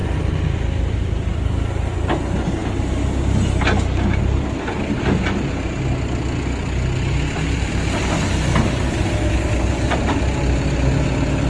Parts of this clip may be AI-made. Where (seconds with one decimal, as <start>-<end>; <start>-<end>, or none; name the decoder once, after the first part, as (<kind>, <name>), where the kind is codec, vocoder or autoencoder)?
none